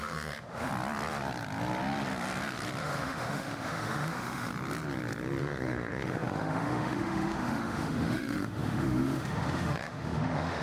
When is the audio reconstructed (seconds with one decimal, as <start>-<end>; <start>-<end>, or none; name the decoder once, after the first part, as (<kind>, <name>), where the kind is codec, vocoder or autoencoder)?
0.0-0.7 (autoencoder, DAC-VAE); 2.8-4.5; 5.4-10.6